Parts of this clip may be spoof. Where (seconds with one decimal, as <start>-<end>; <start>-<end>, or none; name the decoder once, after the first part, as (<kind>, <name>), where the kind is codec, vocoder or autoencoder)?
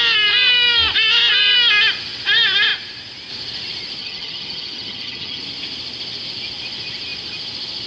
4.0-5.4 (vocoder, HiFi-GAN)